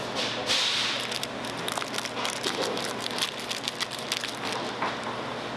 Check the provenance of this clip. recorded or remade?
recorded